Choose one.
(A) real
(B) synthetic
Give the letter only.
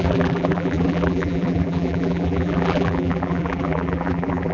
B